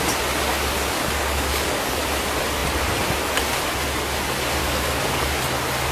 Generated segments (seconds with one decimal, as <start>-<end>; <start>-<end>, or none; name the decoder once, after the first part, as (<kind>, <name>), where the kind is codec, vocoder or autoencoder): 0.5-2.0 (codec, DAC); 4.6-5.4